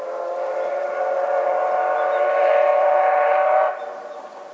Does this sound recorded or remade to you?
recorded